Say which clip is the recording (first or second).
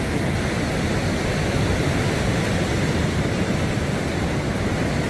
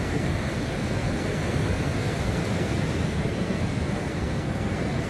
first